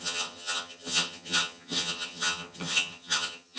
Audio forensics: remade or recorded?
remade